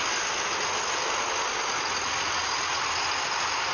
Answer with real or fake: real